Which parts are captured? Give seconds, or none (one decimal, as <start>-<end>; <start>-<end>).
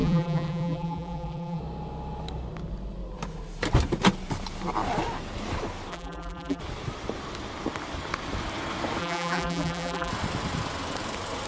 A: 1.6-5.9; 6.6-9.0; 10.1-11.5